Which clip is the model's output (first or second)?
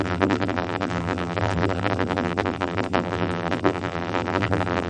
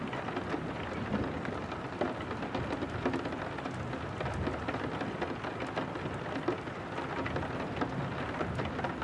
first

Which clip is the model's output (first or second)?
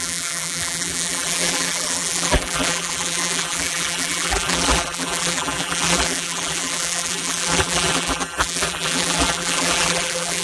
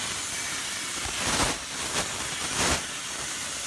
first